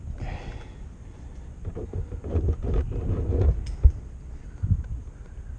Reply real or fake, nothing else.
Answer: real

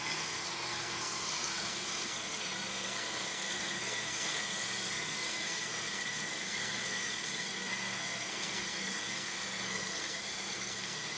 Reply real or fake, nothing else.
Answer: fake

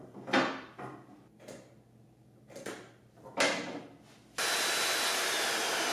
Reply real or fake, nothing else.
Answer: real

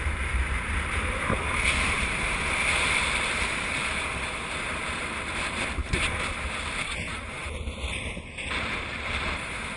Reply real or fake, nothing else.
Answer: fake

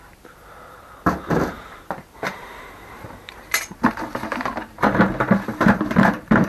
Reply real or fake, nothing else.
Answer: fake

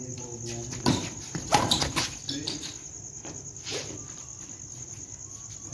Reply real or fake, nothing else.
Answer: real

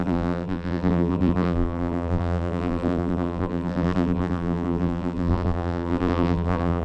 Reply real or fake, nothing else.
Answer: fake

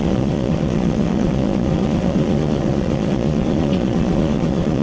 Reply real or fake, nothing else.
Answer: fake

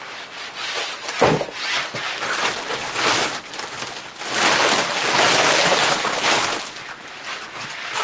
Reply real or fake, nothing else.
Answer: real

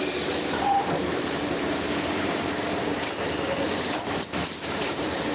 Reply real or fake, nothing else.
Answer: fake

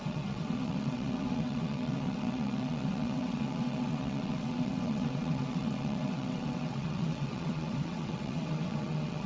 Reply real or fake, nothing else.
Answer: fake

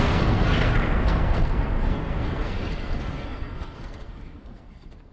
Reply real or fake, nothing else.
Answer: fake